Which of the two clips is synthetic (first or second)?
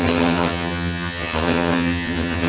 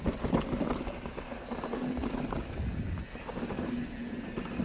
first